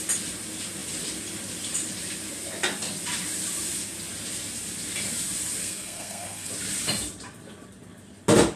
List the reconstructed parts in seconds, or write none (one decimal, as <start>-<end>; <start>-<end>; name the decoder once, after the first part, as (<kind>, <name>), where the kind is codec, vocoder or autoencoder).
5.6-6.5 (codec, SNAC)